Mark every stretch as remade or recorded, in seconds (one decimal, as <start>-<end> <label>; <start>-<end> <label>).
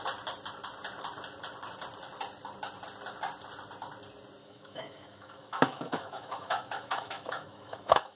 0.0-4.4 recorded; 4.4-8.2 remade